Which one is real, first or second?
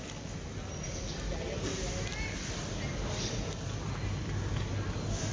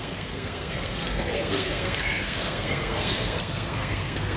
first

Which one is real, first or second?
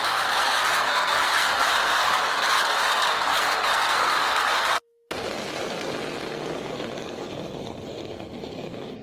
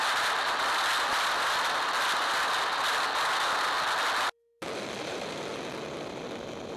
second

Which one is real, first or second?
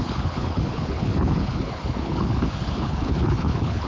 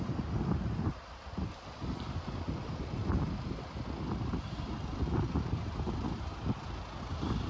second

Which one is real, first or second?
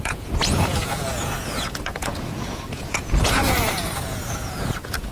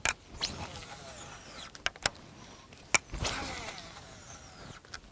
second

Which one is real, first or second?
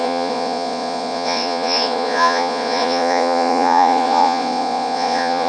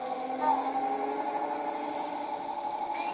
second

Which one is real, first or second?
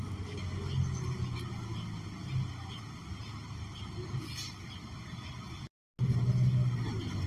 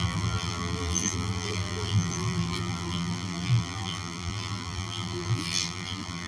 first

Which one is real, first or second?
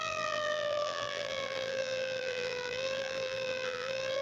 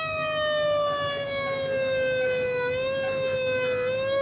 second